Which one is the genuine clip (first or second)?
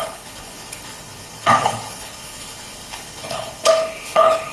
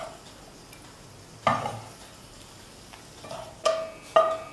second